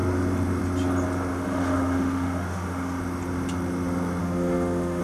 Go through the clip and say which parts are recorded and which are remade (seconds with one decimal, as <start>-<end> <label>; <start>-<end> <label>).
0.0-1.3 recorded; 1.3-3.0 remade; 3.0-4.2 recorded; 4.2-5.0 remade